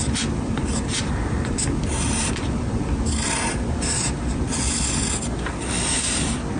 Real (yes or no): yes